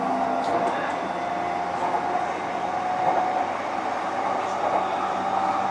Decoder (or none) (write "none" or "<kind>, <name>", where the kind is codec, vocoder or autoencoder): none